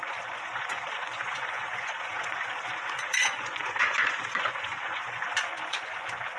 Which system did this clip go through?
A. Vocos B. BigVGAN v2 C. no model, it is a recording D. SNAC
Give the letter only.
A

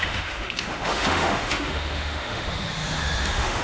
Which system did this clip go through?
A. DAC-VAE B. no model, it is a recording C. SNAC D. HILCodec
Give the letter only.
A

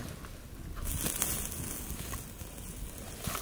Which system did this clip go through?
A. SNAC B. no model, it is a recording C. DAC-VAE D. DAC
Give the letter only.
B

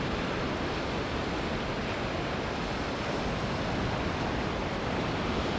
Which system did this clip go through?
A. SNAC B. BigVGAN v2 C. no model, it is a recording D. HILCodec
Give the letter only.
C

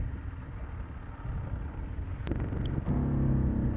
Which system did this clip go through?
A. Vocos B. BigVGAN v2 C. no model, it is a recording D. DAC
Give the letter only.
C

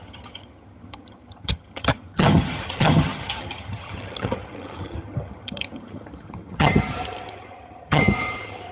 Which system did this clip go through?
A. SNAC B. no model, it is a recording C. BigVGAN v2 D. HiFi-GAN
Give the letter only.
D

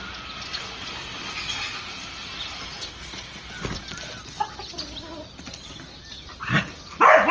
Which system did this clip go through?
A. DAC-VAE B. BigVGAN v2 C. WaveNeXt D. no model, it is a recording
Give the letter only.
D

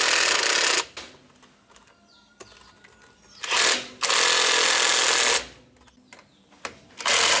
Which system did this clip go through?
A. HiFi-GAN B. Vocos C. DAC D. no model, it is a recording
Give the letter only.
D